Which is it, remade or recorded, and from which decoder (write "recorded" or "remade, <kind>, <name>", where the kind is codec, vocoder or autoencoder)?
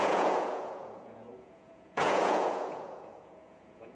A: remade, vocoder, Vocos